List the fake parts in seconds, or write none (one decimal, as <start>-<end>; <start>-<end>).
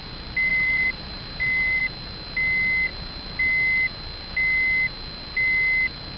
0.5-1.8